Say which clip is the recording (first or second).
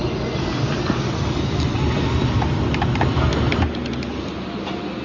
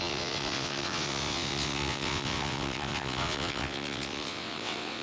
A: first